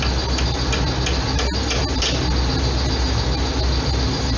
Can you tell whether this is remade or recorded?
recorded